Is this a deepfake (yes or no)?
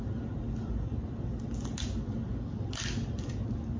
no